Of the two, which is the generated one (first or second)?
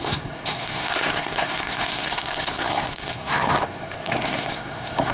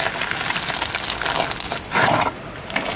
first